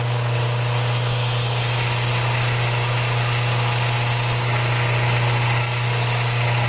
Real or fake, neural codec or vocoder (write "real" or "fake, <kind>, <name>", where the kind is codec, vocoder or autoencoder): real